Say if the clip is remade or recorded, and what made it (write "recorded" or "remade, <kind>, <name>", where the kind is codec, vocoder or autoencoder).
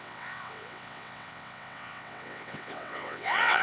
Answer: remade, vocoder, WaveNeXt